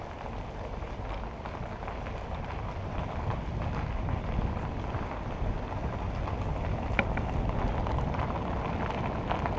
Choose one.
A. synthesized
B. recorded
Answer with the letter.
B